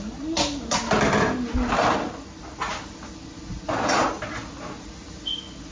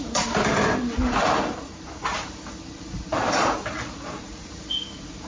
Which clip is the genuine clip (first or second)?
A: first